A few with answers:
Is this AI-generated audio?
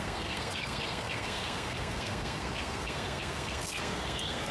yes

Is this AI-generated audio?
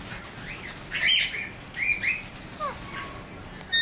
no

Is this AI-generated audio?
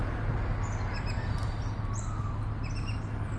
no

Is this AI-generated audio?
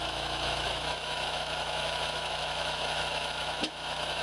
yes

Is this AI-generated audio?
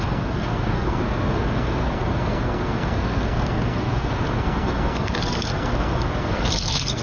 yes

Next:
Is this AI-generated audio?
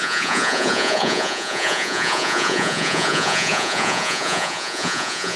yes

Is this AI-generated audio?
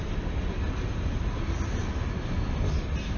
no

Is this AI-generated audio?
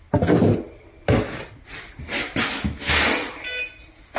no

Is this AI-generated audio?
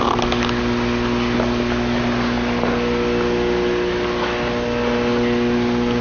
no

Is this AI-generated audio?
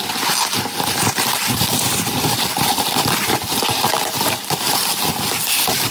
no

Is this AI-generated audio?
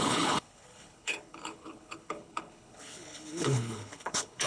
yes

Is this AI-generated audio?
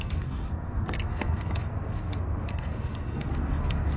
yes